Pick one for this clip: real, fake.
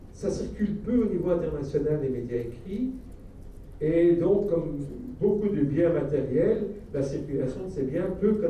real